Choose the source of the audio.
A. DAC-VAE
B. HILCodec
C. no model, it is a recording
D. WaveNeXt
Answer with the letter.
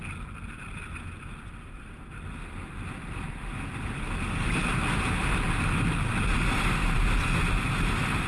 C